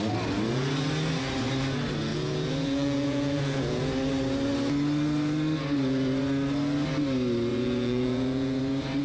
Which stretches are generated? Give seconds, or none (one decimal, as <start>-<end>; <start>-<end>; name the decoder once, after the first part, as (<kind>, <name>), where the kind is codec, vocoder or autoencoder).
2.1-3.8 (vocoder, Vocos); 7.5-8.6